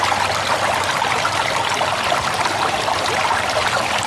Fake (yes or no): no